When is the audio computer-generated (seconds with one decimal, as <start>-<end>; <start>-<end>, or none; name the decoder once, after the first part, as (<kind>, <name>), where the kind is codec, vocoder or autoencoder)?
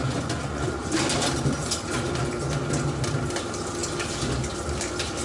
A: 0.0-0.9 (vocoder, Vocos)